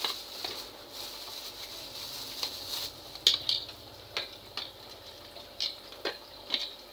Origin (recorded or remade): recorded